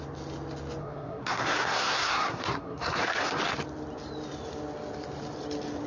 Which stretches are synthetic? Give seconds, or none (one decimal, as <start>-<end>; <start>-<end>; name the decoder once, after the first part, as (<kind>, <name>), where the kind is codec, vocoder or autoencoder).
0.8-3.4 (codec, SNAC)